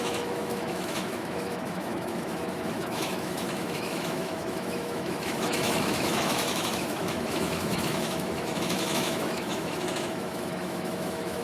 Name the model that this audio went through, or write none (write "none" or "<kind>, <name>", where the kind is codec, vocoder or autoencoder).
autoencoder, DAC-VAE